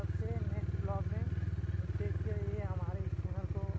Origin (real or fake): real